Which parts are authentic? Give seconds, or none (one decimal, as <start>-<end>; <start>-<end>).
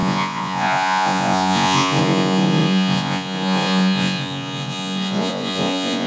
none